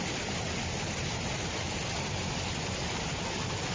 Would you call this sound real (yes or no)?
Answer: yes